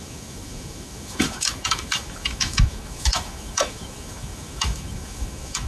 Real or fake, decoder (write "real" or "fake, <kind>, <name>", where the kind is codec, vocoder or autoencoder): fake, autoencoder, DAC-VAE